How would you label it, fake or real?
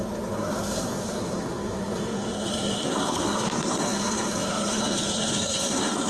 fake